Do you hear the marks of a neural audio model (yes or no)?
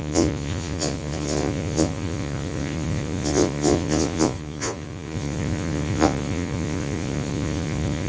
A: yes